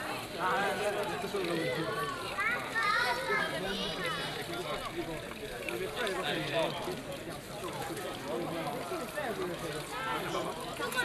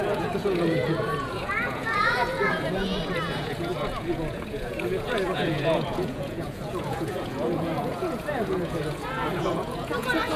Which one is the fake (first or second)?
second